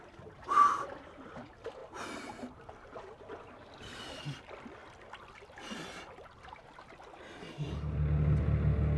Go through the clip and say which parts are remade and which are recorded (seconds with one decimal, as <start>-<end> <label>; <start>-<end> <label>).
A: 0.0-9.0 recorded

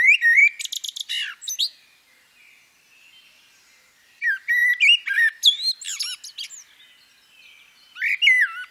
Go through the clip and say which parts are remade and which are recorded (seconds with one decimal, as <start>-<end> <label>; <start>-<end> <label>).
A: 0.0-8.7 recorded

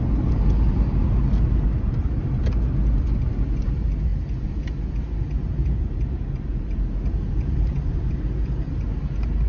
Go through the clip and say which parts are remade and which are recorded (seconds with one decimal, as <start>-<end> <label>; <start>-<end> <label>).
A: 0.0-9.5 recorded